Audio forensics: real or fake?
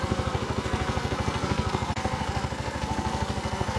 fake